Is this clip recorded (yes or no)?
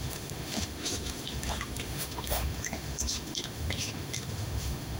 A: no